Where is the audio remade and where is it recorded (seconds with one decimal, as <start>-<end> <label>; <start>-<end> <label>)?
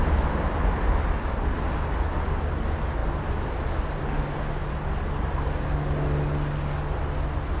0.0-7.6 recorded